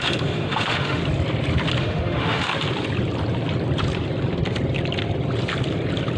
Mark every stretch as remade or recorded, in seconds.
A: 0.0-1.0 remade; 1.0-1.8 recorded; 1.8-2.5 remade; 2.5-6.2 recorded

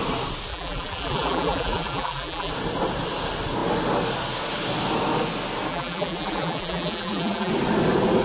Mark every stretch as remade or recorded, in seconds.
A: 0.0-0.5 recorded; 0.5-2.5 remade; 2.5-5.7 recorded; 5.7-7.5 remade; 7.5-8.2 recorded

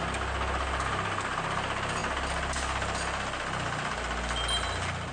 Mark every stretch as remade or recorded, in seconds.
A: 0.0-5.1 recorded